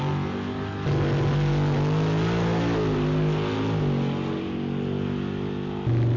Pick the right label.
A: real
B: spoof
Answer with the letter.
A